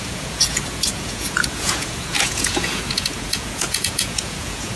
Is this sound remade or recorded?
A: remade